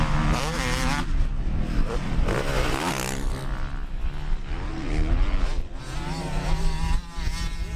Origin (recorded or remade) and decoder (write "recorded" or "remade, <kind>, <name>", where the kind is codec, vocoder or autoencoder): recorded